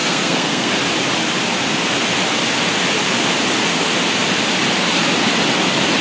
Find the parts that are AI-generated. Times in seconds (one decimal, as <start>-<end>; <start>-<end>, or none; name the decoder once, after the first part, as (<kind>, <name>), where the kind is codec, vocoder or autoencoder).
0.0-0.7 (codec, SNAC)